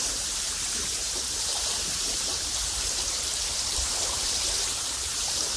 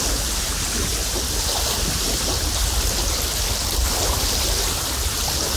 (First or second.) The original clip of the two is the second